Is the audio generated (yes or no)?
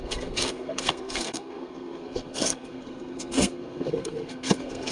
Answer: yes